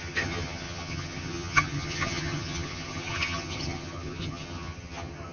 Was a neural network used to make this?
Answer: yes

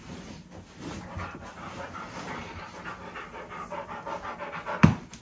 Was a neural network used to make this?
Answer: no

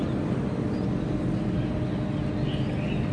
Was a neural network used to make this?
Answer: no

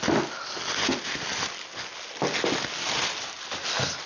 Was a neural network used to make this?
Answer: no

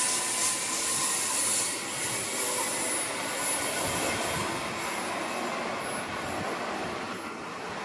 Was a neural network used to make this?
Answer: no